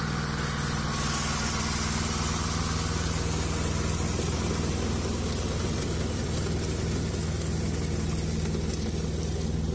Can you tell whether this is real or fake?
real